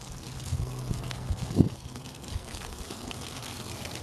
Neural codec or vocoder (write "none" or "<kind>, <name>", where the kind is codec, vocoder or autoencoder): codec, SNAC